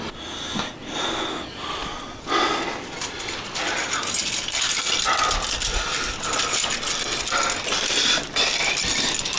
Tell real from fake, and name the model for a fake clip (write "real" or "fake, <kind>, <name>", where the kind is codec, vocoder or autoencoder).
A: real